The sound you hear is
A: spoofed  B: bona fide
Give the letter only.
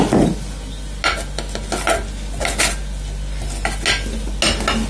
B